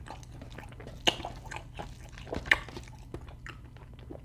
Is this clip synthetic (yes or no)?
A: no